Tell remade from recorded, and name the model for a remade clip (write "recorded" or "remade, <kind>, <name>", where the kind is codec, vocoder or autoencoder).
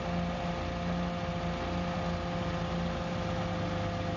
recorded